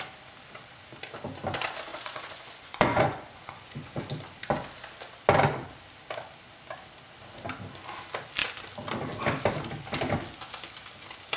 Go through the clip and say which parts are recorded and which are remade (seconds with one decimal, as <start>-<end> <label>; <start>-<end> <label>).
0.0-1.9 recorded; 1.9-4.0 remade; 4.0-11.4 recorded